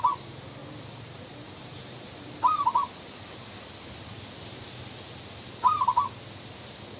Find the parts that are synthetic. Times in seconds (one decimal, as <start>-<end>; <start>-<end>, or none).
0.6-3.5